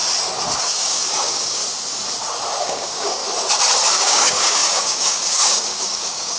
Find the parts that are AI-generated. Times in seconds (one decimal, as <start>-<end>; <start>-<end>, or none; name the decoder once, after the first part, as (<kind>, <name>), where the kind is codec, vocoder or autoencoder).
0.6-1.6 (codec, DAC); 2.6-3.2; 3.9-6.4